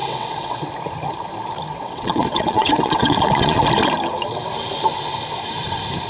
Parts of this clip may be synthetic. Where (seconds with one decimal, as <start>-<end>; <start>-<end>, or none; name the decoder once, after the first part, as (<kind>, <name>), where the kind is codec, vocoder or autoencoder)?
0.0-0.7 (vocoder, WaveNeXt); 1.7-3.6

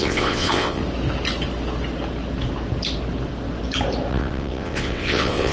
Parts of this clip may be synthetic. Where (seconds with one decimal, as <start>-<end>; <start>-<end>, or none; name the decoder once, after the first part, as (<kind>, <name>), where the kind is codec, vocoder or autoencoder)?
0.0-0.8 (vocoder, WaveNeXt); 4.1-5.5